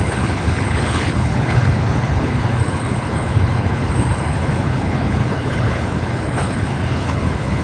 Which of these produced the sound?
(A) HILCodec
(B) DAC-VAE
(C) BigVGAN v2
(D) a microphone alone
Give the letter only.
A